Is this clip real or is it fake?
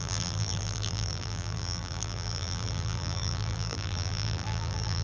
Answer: fake